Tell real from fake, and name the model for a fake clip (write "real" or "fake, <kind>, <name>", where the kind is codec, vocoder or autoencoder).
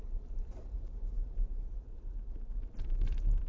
fake, vocoder, BigVGAN v2